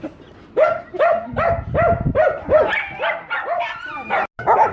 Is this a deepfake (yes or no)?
no